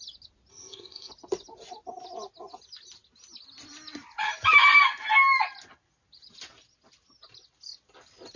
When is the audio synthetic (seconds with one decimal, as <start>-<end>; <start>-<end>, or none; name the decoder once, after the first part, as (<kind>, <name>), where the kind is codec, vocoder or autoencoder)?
0.5-1.1 (codec, ZipCodec)